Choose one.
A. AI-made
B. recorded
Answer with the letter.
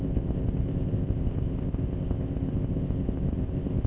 A